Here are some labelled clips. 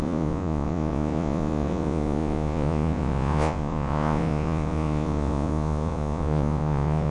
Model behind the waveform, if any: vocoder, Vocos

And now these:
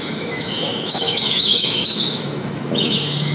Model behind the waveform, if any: autoencoder, DAC-VAE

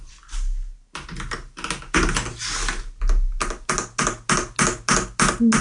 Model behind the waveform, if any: none